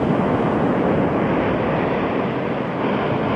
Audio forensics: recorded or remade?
recorded